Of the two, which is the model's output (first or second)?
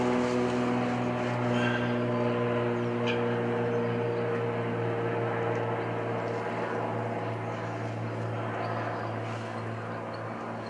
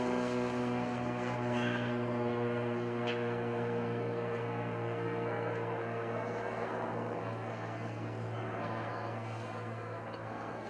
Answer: second